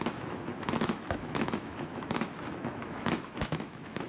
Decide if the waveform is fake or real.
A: fake